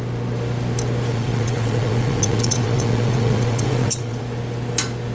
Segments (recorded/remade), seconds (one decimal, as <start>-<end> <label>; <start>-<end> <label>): 0.0-1.1 recorded; 1.1-4.2 remade; 4.2-5.1 recorded